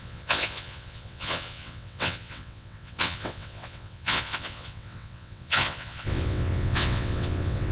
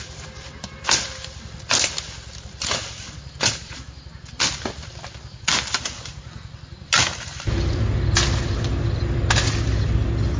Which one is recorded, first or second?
second